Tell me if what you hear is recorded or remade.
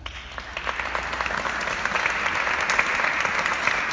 recorded